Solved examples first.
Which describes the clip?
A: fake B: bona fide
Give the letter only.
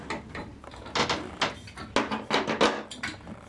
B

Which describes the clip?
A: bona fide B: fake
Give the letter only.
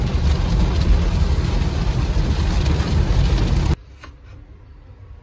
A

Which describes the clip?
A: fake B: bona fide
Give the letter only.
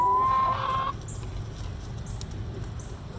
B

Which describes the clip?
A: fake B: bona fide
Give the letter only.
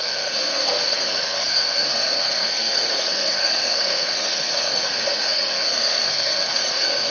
A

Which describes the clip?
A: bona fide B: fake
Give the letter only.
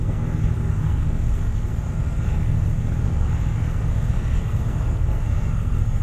B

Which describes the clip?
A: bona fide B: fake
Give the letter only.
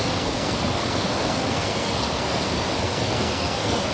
B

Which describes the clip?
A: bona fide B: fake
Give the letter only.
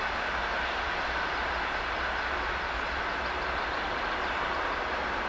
A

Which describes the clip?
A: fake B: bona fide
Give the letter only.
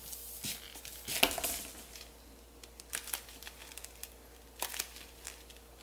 B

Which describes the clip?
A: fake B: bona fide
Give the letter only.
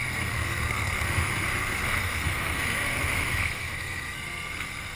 A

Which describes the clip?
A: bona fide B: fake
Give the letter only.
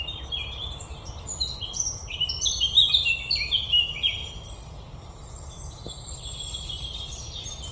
A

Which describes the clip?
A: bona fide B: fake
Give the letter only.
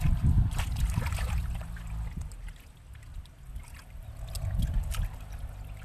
A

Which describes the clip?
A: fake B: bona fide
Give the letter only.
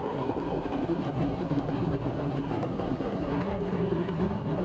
A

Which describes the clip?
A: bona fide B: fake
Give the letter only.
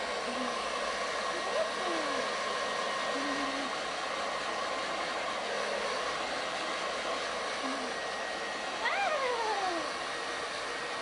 A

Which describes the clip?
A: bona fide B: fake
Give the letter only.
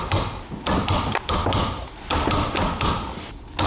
A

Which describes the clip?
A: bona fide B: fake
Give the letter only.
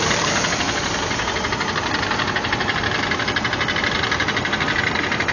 A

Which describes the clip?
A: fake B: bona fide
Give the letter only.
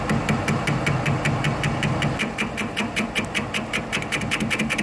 B